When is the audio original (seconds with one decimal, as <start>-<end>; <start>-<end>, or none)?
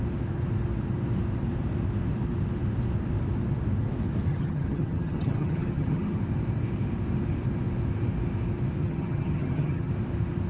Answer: 0.0-4.3; 6.2-8.8; 9.9-10.5